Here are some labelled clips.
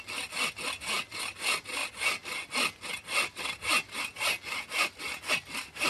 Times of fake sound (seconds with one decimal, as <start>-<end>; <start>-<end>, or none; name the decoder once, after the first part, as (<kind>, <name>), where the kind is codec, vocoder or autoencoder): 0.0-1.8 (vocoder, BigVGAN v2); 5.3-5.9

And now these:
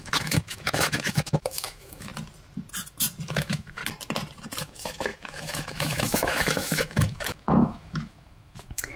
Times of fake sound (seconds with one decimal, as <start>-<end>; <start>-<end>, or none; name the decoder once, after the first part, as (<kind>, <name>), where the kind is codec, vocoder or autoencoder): 0.0-2.1 (autoencoder, DAC-VAE); 3.3-3.8; 4.6-9.0

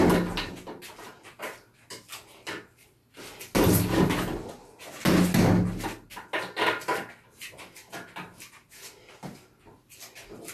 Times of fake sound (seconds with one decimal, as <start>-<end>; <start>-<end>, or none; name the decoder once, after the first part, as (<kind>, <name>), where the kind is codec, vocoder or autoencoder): none

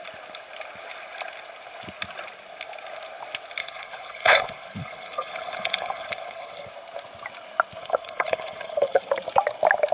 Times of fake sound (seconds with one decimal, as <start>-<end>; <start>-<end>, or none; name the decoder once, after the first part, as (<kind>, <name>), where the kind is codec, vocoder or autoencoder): 3.6-6.7 (codec, HILCodec); 7.8-9.1

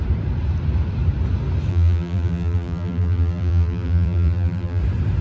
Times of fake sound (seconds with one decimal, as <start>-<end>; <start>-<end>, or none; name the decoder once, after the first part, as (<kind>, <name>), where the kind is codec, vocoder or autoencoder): 1.7-4.8 (vocoder, BigVGAN v2)